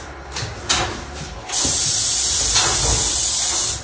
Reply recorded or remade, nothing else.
recorded